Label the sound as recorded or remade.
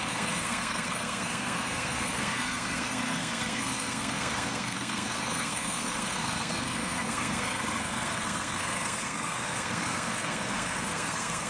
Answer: remade